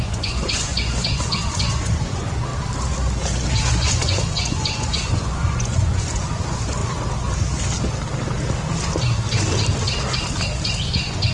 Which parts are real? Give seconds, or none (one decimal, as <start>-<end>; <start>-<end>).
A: 2.5-3.6; 6.8-10.4